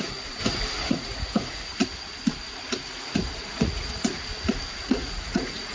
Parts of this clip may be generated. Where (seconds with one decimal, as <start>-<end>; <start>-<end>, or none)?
0.0-0.4; 0.9-1.7; 2.9-4.1; 4.8-5.7